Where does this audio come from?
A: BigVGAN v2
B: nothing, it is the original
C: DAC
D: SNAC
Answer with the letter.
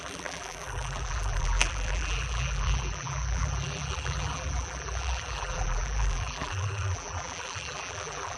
A